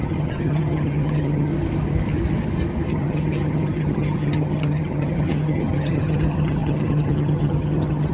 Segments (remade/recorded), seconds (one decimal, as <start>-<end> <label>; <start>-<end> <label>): 0.0-1.5 remade; 1.5-2.9 recorded; 2.9-8.1 remade